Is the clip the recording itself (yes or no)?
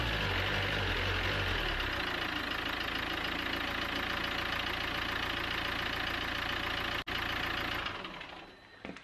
yes